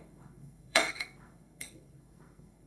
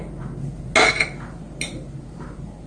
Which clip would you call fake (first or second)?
first